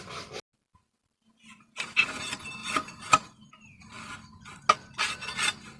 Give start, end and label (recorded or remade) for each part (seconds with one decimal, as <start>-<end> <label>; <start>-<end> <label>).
0.0-1.5 recorded; 1.5-2.2 remade; 2.2-2.6 recorded; 2.6-3.5 remade; 3.5-5.8 recorded